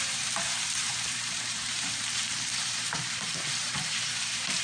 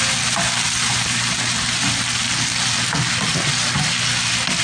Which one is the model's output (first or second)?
first